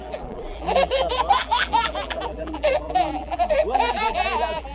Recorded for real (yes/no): no